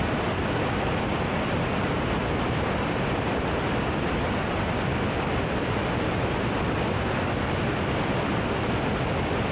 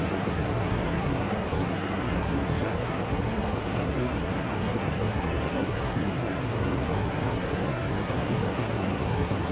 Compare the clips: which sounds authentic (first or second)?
first